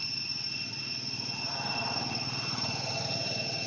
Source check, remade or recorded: recorded